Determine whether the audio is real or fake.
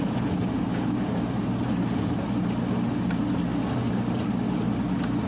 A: real